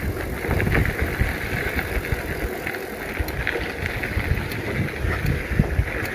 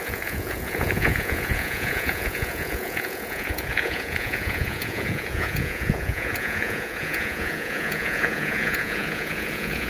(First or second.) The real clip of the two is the first